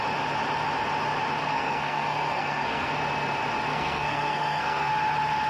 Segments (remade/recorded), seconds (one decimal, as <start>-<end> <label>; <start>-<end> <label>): 0.0-1.4 recorded; 1.4-2.9 remade; 2.9-3.7 recorded; 3.7-4.9 remade; 4.9-5.5 recorded

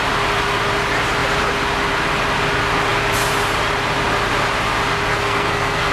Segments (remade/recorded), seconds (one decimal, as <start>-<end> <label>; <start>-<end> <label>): 0.0-5.1 recorded; 5.1-5.9 remade

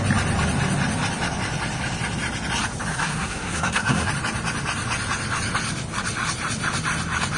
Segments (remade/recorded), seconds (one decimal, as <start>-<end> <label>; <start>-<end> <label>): 0.0-2.9 recorded; 2.9-4.1 remade; 4.1-7.4 recorded

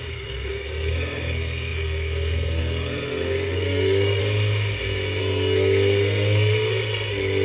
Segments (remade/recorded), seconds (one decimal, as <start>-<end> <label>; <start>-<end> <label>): 0.0-4.2 remade; 4.2-5.2 recorded; 5.2-7.4 remade

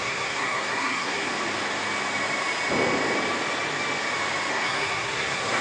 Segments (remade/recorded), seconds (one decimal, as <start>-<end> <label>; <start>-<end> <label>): 0.0-1.3 remade; 1.3-4.5 recorded; 4.5-5.6 remade